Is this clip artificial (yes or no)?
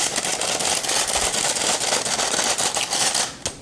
no